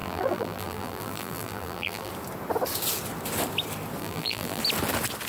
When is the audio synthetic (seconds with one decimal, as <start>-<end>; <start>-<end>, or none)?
0.0-2.1; 4.0-4.6